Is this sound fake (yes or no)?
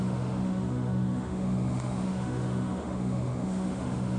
yes